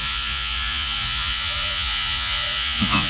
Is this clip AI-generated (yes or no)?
yes